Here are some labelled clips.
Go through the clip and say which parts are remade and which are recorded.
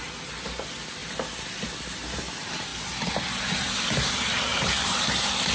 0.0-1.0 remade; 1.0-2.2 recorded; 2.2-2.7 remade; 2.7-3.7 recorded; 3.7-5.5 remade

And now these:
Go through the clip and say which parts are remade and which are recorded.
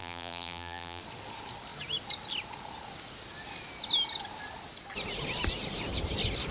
0.0-1.0 remade; 1.0-6.5 recorded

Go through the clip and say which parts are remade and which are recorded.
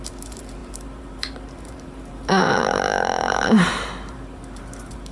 0.0-5.1 remade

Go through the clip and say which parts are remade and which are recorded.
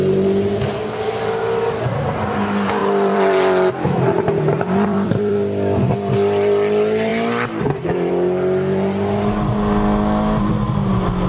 0.0-2.8 recorded; 2.8-5.3 remade; 5.3-11.3 recorded